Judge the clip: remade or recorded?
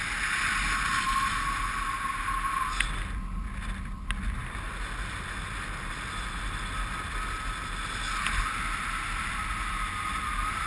recorded